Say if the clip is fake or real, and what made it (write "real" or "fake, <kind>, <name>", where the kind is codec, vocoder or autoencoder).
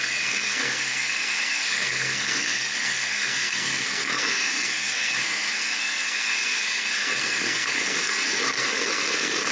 fake, codec, SNAC